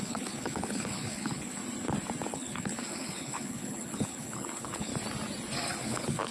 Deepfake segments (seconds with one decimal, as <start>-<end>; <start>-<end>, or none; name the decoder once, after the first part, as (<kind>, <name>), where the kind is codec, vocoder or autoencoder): 0.0-1.6 (codec, HILCodec); 2.3-4.9; 5.8-6.3